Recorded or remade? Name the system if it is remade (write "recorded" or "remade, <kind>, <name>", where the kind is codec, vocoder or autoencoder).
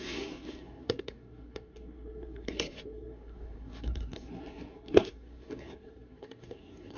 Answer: remade, codec, SNAC